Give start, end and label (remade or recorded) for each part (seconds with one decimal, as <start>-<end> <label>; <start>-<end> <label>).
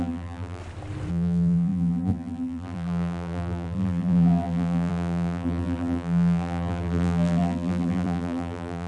0.0-0.6 remade; 0.6-1.1 recorded; 1.1-8.9 remade